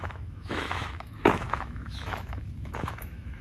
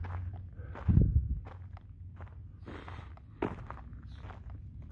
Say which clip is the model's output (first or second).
first